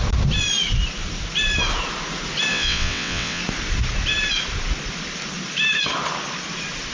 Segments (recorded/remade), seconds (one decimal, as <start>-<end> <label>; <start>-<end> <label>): 0.0-2.5 recorded; 2.5-3.4 remade; 3.4-6.9 recorded